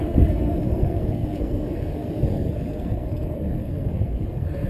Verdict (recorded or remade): remade